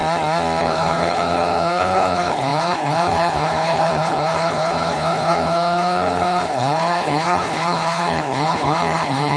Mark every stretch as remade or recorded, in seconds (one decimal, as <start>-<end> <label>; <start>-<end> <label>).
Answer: 0.0-0.6 recorded; 0.6-9.4 remade